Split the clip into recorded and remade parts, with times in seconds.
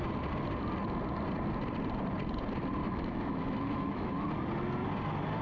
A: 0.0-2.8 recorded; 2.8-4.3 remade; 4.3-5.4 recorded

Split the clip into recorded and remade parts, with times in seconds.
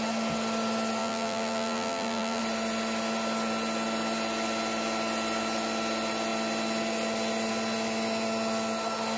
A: 0.0-1.0 recorded; 1.0-2.4 remade; 2.4-9.2 recorded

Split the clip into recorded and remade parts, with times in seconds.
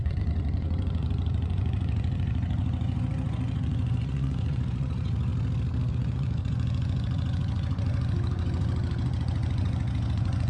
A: 0.0-5.3 remade; 5.3-5.9 recorded; 5.9-10.5 remade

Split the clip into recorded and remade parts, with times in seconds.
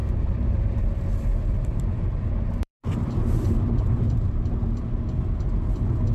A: 0.0-0.8 remade; 0.8-1.3 recorded; 1.3-5.0 remade; 5.0-6.1 recorded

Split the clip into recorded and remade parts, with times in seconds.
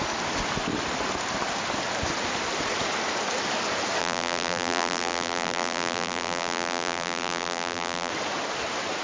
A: 0.0-4.0 recorded; 4.0-8.1 remade; 8.1-9.0 recorded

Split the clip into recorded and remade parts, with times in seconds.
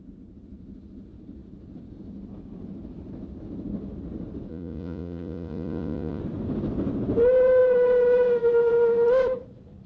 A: 0.0-4.5 recorded; 4.5-6.2 remade; 6.2-9.9 recorded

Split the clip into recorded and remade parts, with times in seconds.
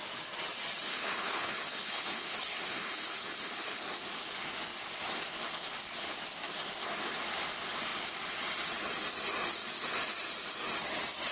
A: 0.0-0.9 recorded; 0.9-3.8 remade; 3.8-11.3 recorded